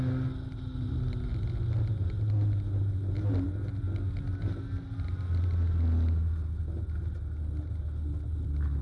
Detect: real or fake real